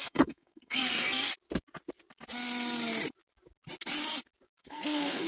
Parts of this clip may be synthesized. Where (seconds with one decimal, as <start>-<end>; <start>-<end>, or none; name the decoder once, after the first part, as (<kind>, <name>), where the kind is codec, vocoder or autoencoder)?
0.0-1.3 (codec, SNAC); 4.5-5.3